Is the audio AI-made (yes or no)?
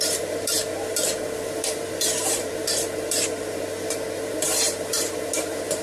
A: yes